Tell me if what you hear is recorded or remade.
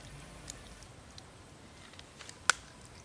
recorded